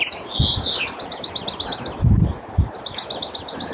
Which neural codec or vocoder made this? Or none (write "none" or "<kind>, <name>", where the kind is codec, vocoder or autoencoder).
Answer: none